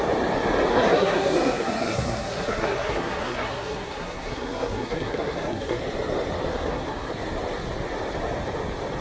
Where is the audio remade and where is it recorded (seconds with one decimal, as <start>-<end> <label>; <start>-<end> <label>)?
0.0-0.7 recorded; 0.7-5.8 remade; 5.8-6.5 recorded; 6.5-7.1 remade; 7.1-9.0 recorded